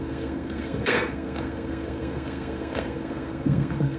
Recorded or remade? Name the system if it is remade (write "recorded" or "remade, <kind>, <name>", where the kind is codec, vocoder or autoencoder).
remade, codec, SNAC